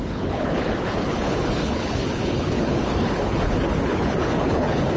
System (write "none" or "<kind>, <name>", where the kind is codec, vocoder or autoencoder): codec, HILCodec